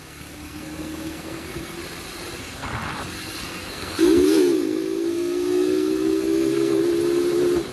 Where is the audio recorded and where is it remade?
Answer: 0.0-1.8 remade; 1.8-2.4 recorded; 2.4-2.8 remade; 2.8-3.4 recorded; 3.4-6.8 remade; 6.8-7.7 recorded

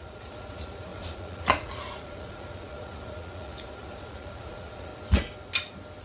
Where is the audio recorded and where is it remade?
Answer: 0.0-4.9 remade; 4.9-6.0 recorded